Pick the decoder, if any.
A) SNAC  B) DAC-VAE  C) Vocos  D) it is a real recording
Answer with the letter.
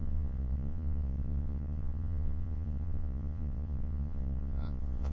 C